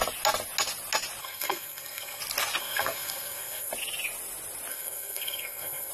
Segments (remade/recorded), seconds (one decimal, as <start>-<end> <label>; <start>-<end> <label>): 0.0-1.2 recorded; 1.2-2.2 remade; 2.2-2.6 recorded; 2.6-3.7 remade; 3.7-4.7 recorded; 4.7-5.9 remade